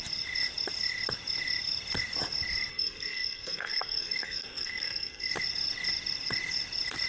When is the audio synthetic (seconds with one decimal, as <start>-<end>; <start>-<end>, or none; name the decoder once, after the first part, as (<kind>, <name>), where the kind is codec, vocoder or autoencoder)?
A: 2.7-5.3 (codec, SNAC)